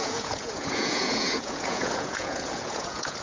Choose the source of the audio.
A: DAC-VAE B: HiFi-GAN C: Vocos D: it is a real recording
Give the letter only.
C